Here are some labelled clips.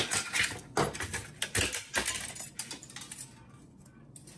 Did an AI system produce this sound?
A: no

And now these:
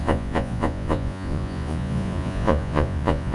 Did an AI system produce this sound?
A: yes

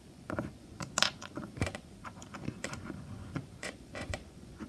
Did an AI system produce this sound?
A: yes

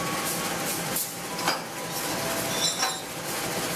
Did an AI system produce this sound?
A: no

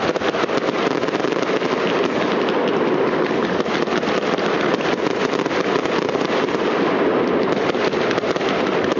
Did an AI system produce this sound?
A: no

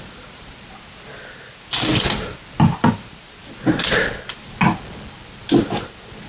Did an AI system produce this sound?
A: no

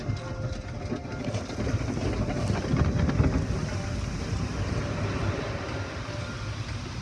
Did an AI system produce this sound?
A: no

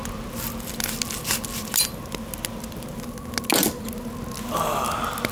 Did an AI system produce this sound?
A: no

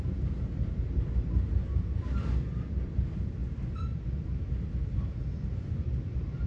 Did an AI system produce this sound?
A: no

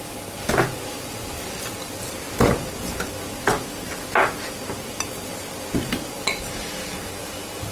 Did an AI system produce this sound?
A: no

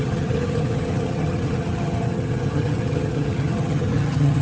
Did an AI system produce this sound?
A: yes